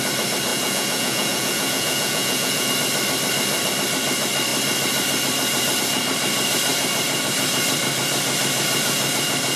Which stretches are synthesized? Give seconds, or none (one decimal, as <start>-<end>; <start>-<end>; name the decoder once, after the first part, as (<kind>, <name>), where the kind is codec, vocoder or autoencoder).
0.5-2.7 (vocoder, Vocos)